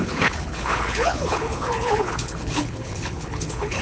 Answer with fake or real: fake